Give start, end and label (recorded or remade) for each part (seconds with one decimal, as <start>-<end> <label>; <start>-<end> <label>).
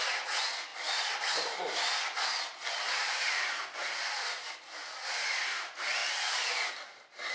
0.0-7.3 recorded